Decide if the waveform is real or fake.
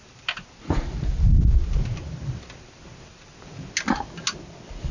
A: real